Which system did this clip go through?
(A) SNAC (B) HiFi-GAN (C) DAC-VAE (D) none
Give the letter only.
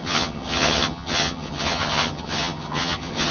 B